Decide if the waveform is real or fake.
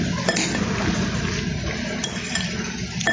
real